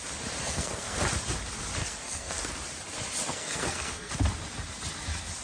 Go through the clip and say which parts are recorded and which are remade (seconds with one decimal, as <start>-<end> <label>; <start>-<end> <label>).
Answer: 0.0-0.4 recorded; 0.4-1.0 remade; 1.0-1.8 recorded; 1.8-2.5 remade; 2.5-3.3 recorded; 3.3-4.1 remade; 4.1-5.4 recorded